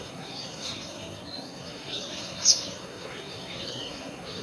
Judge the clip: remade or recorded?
remade